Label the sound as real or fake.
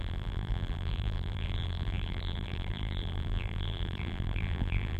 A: fake